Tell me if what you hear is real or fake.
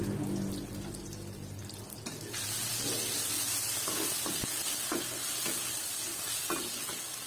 real